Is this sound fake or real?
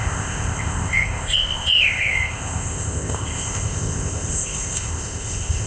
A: fake